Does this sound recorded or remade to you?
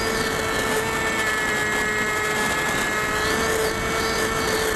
recorded